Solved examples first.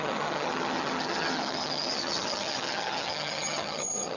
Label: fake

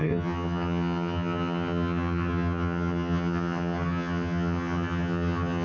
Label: fake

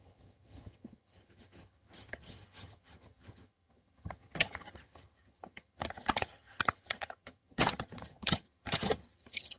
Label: fake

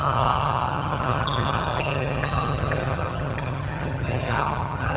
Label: fake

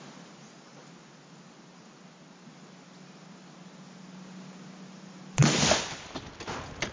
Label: real